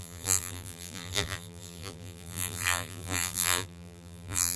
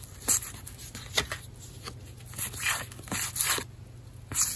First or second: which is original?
second